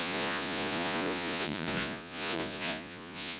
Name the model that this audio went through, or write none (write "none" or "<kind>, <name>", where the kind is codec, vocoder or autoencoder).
vocoder, Vocos